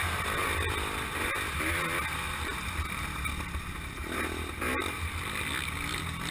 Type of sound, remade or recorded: recorded